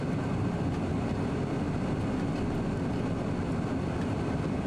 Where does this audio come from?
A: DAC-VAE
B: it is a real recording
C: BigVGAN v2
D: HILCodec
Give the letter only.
B